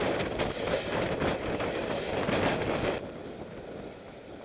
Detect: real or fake real